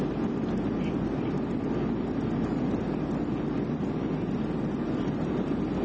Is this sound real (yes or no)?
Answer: yes